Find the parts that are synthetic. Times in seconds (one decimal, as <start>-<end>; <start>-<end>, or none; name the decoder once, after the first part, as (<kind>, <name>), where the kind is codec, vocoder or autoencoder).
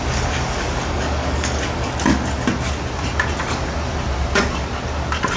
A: 0.0-2.1 (codec, DAC)